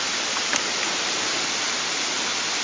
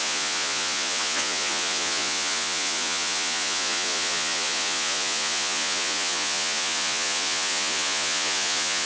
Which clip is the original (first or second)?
first